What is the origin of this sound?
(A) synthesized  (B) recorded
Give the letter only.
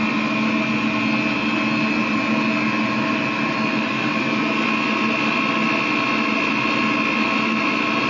B